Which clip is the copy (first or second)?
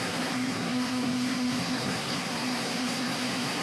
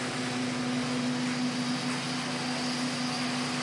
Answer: first